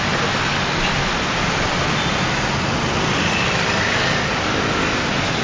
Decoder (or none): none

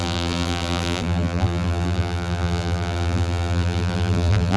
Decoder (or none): vocoder, BigVGAN v2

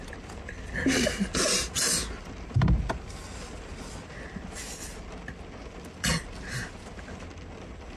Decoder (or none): none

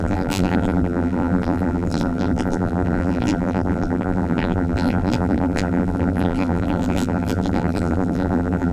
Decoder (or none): vocoder, BigVGAN v2